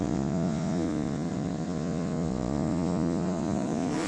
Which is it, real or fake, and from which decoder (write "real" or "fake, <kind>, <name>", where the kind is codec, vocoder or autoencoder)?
fake, vocoder, Vocos